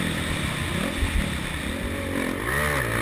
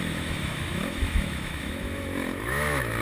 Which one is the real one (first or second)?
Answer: first